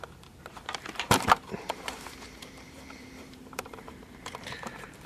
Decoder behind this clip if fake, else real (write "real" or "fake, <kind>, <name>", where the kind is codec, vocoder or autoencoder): fake, vocoder, BigVGAN v2